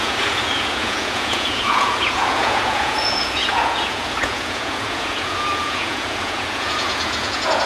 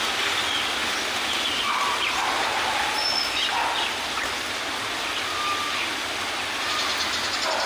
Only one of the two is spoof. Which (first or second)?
first